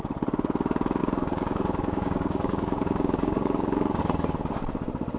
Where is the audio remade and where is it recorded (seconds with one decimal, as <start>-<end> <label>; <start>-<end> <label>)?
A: 0.0-1.0 recorded; 1.0-4.0 remade; 4.0-5.2 recorded